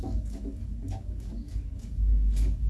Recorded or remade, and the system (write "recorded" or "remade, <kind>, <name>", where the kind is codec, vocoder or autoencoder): remade, codec, DAC